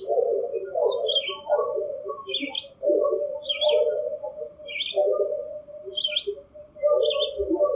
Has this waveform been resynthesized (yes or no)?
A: no